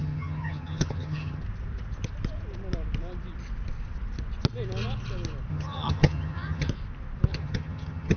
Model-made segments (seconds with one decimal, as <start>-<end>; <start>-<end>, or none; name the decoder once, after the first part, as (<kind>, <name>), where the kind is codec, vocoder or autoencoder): 0.0-1.4 (vocoder, HiFi-GAN); 5.5-6.7; 7.3-8.2